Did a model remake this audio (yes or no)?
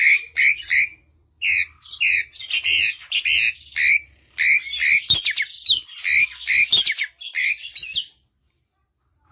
no